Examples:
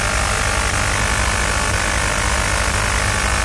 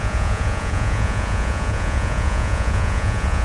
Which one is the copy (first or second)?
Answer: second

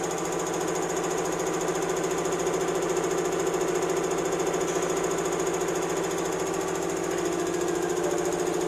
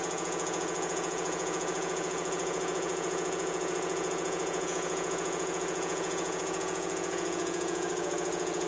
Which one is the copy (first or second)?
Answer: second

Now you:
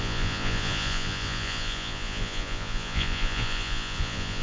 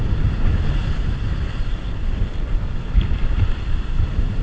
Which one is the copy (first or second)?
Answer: first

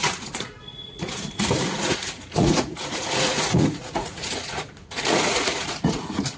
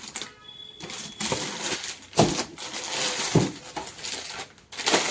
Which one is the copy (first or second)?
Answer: first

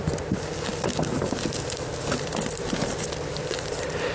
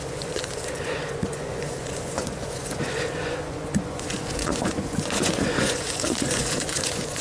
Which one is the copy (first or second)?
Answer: second